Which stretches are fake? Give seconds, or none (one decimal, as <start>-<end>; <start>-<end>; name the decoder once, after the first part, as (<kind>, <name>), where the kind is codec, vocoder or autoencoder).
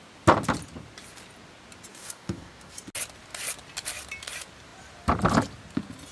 1.9-2.7 (codec, DAC)